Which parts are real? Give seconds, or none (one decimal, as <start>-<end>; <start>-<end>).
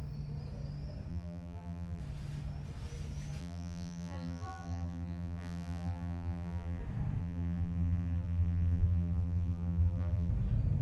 0.0-1.1; 2.0-3.4; 6.8-7.2; 10.3-10.8